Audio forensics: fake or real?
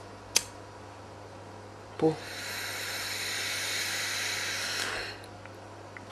real